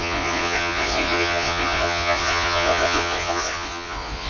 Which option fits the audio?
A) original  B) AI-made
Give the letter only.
B